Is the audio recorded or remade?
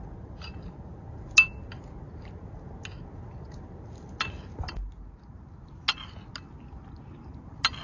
recorded